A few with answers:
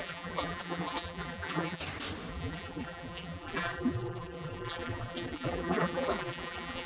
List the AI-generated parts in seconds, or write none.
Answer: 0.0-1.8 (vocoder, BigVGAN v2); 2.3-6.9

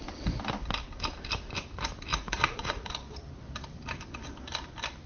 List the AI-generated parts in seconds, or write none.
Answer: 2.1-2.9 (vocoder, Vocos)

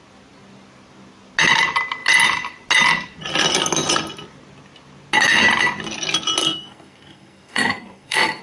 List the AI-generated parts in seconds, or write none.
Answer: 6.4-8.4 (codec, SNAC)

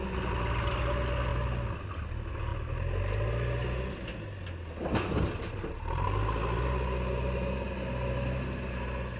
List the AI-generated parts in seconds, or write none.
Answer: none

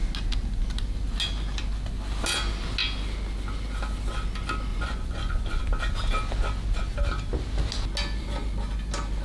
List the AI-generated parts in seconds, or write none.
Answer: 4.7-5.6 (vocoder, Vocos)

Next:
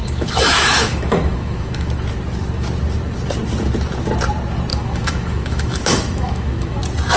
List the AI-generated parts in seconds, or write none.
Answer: 0.0-1.9 (autoencoder, DAC-VAE); 4.7-6.8

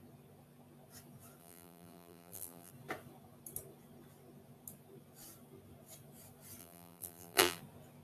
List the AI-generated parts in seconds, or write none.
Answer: 1.4-2.7 (vocoder, BigVGAN v2); 6.6-7.6